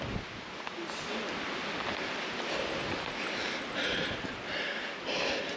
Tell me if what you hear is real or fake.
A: real